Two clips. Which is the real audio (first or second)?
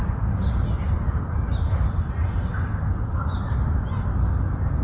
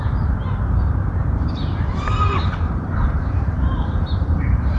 first